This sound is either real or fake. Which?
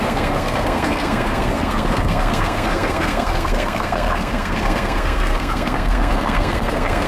fake